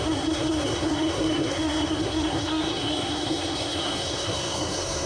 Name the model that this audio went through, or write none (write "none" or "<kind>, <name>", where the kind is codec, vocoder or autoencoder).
codec, SNAC